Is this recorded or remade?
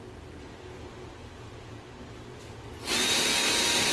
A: recorded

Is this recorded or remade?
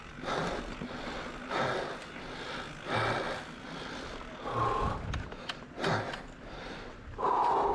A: recorded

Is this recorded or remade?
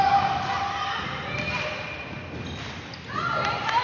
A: recorded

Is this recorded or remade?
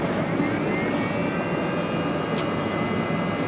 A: recorded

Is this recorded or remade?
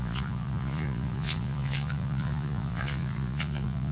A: remade